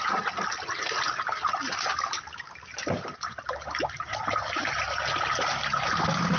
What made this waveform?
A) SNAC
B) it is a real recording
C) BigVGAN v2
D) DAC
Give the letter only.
B